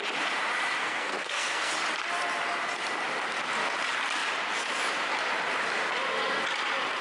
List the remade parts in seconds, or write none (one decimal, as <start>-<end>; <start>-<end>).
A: 0.8-1.7